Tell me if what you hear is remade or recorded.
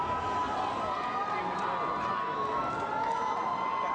recorded